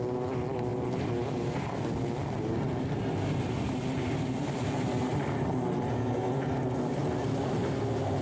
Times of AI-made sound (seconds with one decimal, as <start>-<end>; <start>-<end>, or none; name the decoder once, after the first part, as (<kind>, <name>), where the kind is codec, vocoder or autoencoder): none